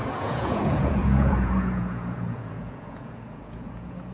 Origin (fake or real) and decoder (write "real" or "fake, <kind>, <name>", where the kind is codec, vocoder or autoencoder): fake, vocoder, Vocos